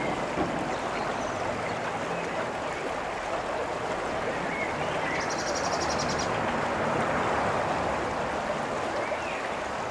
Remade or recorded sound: recorded